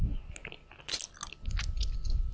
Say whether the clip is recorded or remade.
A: recorded